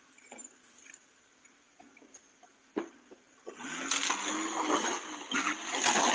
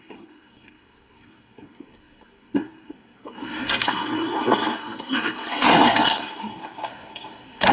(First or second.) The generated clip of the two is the second